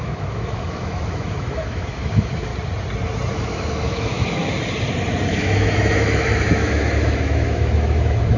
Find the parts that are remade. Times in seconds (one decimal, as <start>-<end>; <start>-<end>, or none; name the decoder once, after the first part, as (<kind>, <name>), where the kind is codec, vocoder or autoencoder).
0.0-2.5 (autoencoder, DAC-VAE); 3.3-4.4; 5.3-8.4